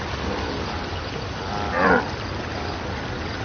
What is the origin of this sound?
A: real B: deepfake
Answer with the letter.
A